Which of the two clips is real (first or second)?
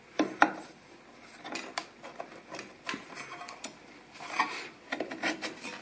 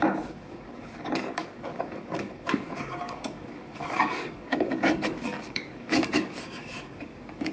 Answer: first